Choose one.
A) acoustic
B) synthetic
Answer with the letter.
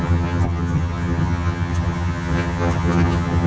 B